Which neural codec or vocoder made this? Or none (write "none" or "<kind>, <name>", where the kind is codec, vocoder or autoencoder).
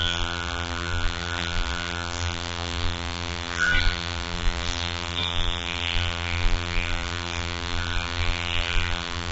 vocoder, BigVGAN v2